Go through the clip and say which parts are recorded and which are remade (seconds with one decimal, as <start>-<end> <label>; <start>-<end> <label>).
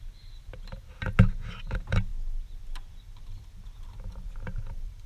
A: 0.0-4.1 recorded; 4.1-5.1 remade